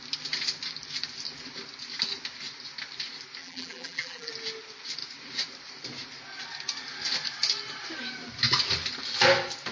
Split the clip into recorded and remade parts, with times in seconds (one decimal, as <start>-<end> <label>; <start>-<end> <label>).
0.0-3.4 recorded; 3.4-4.3 remade; 4.3-9.7 recorded